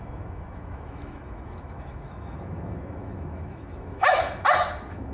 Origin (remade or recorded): remade